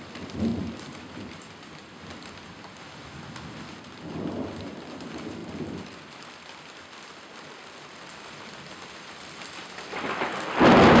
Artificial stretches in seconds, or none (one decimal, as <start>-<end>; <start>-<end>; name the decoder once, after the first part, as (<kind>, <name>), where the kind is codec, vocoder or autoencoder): 0.5-2.0 (vocoder, BigVGAN v2); 5.4-6.3